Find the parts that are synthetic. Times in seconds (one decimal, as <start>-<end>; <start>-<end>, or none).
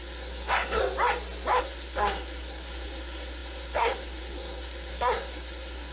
0.0-0.8; 1.6-5.9